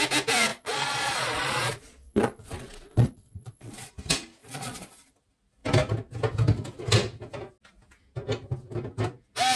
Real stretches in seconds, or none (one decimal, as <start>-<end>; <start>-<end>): 0.0-0.5; 3.9-4.4; 5.1-9.6